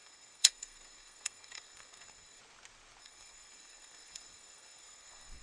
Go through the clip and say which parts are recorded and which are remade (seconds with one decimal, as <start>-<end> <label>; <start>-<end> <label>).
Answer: 0.0-2.4 remade; 2.4-3.0 recorded; 3.0-5.4 remade

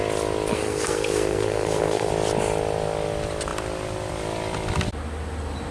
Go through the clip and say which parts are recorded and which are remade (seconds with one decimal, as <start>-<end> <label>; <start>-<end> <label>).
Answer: 0.0-0.5 recorded; 0.5-2.1 remade; 2.1-5.7 recorded

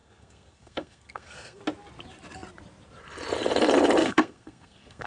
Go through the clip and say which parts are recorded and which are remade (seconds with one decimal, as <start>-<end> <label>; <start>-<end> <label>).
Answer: 0.0-1.6 remade; 1.6-4.0 recorded; 4.0-5.1 remade